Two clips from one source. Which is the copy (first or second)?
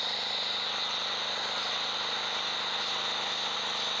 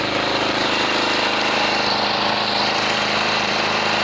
second